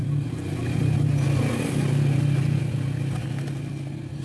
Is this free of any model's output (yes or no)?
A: yes